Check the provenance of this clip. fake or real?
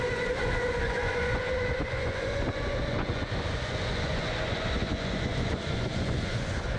fake